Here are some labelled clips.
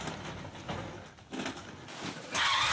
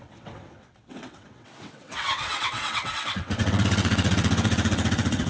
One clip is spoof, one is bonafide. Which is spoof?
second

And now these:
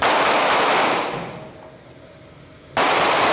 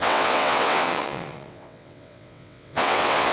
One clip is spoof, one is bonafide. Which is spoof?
second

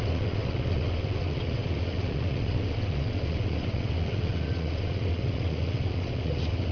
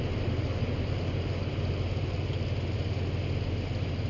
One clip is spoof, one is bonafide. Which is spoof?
first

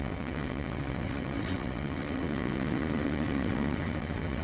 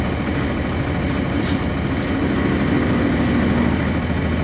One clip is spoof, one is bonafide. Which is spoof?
first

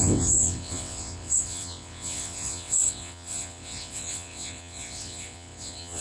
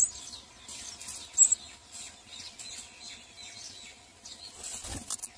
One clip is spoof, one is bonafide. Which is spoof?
first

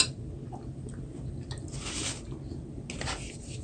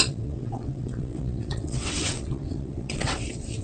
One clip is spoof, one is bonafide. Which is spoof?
second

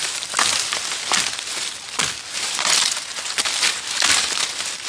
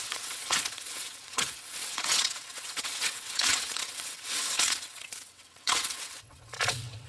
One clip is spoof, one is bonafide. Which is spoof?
second